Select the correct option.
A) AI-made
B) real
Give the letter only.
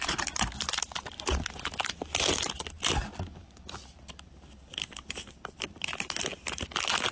B